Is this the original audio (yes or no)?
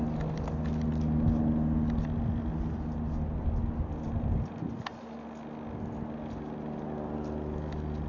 yes